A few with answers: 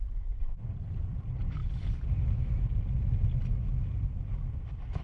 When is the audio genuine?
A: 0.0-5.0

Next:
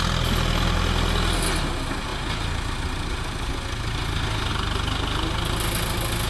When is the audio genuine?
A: 0.0-6.3

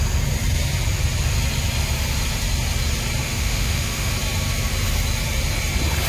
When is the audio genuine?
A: 0.0-3.2; 4.1-6.1

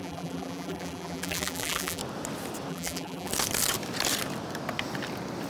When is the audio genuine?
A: 2.0-2.7; 3.3-5.5